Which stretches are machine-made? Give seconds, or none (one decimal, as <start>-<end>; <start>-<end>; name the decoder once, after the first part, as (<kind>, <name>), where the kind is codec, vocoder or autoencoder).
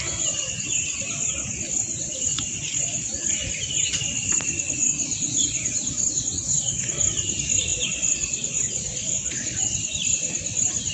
2.3-3.1 (vocoder, Vocos); 4.8-7.0; 7.7-9.7